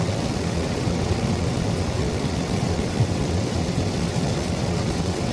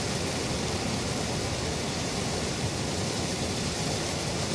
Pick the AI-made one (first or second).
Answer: first